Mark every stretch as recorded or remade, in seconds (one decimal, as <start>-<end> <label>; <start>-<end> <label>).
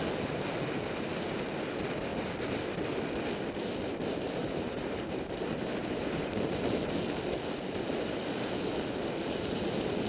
0.0-4.4 recorded; 4.4-6.6 remade; 6.6-10.1 recorded